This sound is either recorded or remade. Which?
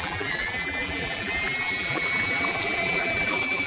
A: remade